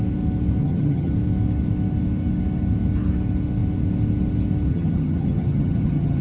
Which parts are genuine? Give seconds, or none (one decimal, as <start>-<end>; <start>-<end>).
0.0-0.6; 1.1-4.7